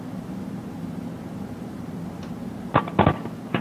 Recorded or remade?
recorded